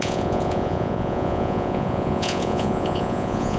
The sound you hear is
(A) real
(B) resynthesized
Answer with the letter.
B